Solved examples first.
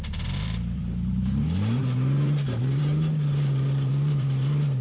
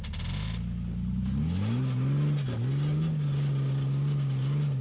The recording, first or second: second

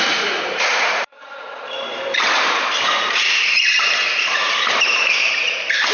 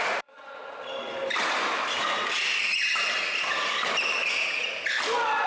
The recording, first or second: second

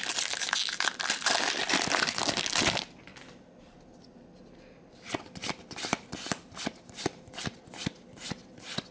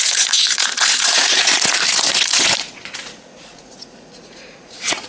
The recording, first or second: first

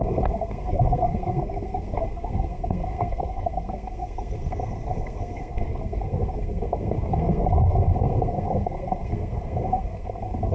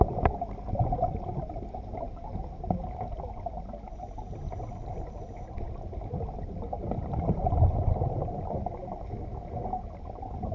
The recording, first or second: second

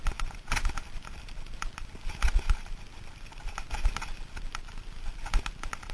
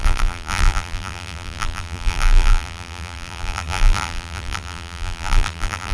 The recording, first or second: first